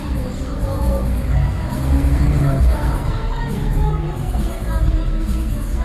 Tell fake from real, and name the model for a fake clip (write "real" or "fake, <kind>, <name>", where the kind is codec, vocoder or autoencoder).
fake, codec, SNAC